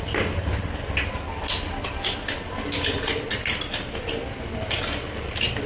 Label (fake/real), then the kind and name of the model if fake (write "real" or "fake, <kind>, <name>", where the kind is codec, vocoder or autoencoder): real